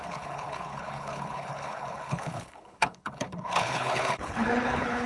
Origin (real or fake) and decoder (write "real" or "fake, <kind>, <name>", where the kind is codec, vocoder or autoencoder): fake, codec, HILCodec